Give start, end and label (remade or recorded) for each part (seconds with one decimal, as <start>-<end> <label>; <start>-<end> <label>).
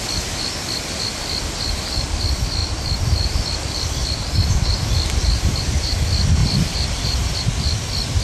0.0-2.6 recorded; 2.6-5.6 remade; 5.6-6.4 recorded; 6.4-7.4 remade; 7.4-8.2 recorded